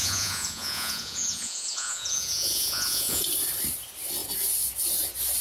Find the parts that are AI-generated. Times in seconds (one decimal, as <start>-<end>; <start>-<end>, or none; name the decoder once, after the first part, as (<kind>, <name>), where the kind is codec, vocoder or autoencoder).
0.0-3.2 (vocoder, Vocos)